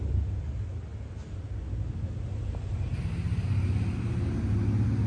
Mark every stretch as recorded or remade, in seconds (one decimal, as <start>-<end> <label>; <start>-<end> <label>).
0.0-5.1 recorded